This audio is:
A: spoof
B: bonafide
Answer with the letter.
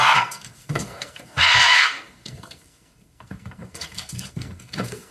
A